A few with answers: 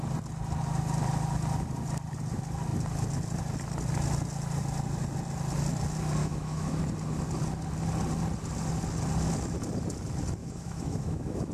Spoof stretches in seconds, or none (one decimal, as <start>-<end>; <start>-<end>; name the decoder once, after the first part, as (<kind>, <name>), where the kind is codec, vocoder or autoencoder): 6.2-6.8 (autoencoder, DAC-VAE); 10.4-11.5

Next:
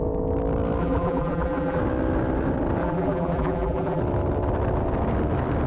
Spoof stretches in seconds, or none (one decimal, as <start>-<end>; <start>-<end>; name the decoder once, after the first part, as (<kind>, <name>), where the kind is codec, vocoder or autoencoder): 0.8-1.8 (vocoder, BigVGAN v2); 2.8-4.0

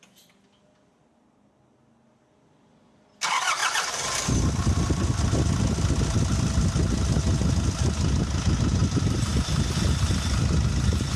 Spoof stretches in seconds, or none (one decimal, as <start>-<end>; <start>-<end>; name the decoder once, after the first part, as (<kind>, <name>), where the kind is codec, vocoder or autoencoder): 3.6-4.3 (vocoder, BigVGAN v2); 8.8-9.3

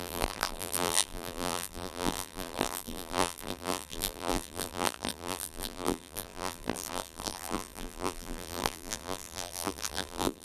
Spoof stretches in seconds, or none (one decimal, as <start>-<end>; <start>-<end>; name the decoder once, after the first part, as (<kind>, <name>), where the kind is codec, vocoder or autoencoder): 0.0-10.4 (vocoder, BigVGAN v2)